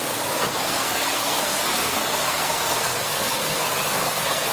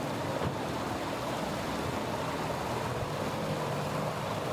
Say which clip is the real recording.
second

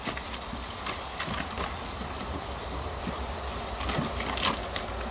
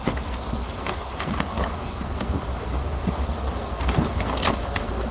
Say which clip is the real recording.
first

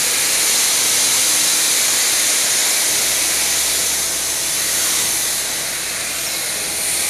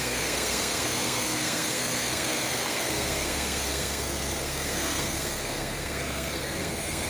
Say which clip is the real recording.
first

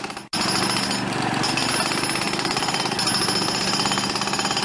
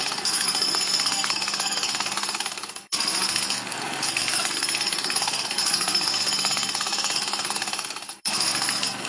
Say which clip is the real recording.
first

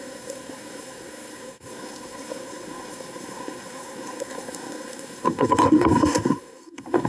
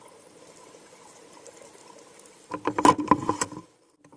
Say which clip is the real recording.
second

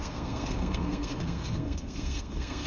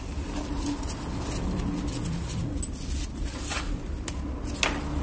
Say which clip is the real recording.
second